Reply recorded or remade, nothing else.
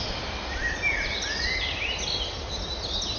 recorded